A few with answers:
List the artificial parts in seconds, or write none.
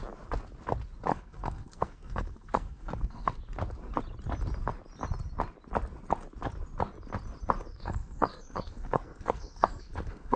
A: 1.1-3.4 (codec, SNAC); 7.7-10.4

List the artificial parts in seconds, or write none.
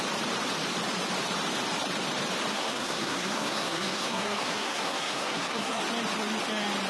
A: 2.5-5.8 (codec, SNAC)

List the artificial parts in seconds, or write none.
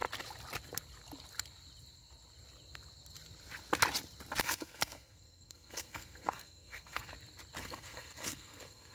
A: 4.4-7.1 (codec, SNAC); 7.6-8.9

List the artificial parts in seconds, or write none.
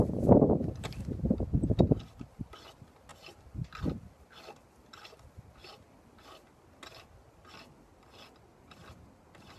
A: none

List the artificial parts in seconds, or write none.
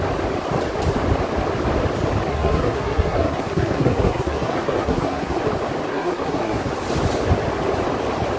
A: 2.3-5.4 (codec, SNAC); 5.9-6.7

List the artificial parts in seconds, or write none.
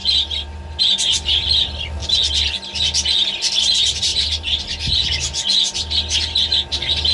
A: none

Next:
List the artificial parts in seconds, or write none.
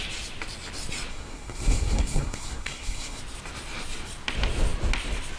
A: 1.1-3.2 (codec, SNAC)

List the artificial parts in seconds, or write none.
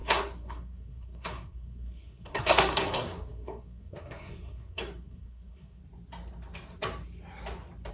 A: 0.0-5.8 (codec, SNAC)